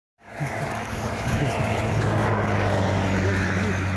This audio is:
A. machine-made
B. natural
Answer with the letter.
A